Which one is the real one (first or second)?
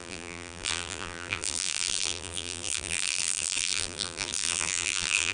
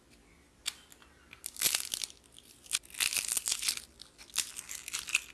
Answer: second